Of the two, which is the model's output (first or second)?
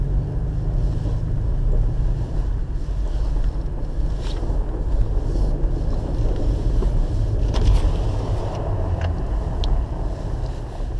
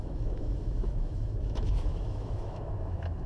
second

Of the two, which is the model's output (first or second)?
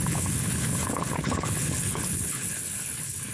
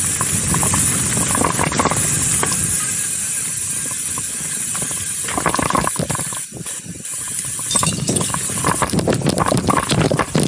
first